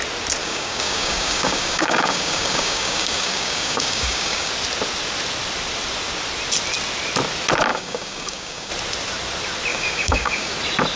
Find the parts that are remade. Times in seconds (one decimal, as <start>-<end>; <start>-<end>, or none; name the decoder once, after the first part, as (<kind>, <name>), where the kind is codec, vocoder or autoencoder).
0.4-4.5 (codec, DAC); 7.7-8.7; 9.7-10.5